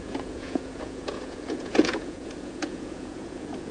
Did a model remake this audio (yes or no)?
yes